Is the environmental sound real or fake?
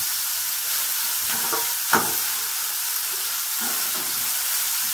fake